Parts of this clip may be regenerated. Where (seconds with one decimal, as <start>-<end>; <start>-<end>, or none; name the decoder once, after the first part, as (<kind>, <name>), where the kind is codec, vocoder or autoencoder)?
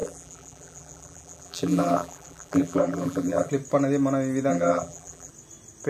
0.0-3.5 (vocoder, BigVGAN v2); 4.5-5.3